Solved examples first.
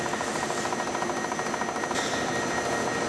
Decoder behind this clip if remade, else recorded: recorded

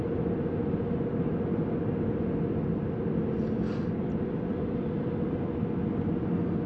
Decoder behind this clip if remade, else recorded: recorded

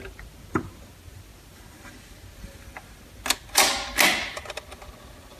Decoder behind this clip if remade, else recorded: recorded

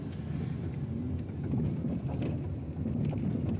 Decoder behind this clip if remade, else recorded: recorded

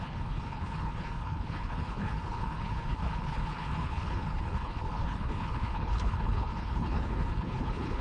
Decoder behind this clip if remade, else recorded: remade, codec, HILCodec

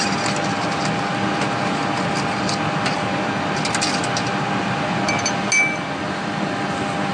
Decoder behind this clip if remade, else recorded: recorded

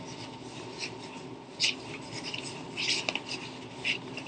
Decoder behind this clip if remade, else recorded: recorded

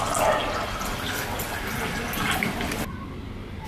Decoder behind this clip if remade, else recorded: recorded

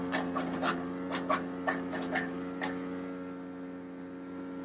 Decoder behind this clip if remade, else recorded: recorded